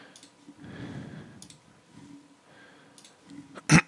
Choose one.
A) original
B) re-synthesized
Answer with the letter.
A